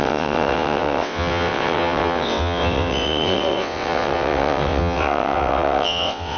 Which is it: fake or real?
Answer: fake